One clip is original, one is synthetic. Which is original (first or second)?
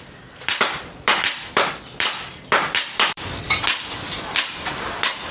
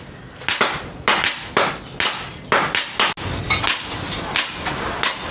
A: second